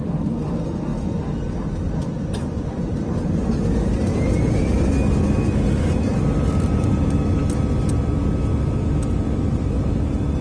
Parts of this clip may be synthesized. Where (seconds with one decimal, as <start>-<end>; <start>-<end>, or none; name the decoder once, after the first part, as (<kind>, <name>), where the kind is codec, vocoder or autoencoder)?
none